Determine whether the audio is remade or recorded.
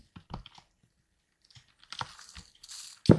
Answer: recorded